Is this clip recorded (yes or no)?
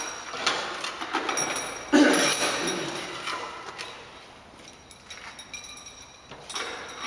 yes